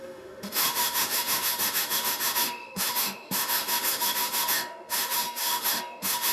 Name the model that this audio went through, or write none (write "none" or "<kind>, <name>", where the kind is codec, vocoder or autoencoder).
autoencoder, DAC-VAE